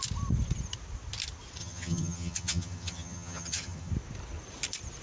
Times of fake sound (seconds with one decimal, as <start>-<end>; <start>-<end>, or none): 1.6-3.9

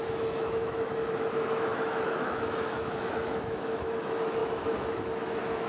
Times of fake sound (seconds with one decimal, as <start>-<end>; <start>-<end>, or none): 0.0-5.7

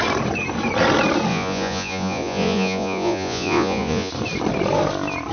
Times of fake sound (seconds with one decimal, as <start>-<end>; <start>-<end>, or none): 1.3-4.1

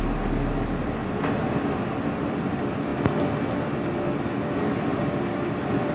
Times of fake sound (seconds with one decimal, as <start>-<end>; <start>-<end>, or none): none

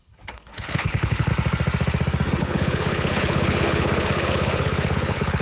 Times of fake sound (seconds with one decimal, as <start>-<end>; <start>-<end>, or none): 0.0-1.3; 2.4-5.4

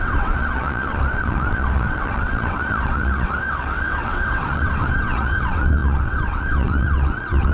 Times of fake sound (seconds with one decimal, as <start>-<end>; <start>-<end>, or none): 0.0-7.5

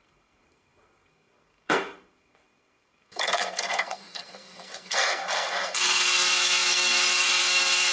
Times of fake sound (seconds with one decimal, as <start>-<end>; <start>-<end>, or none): 0.0-7.9